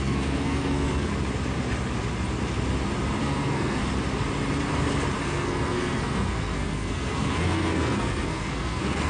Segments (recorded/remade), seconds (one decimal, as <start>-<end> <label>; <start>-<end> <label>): 0.0-1.1 remade; 1.1-3.2 recorded; 3.2-3.8 remade; 3.8-5.2 recorded; 5.2-9.1 remade